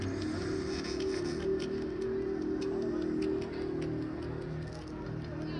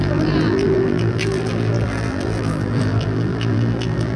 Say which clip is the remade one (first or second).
second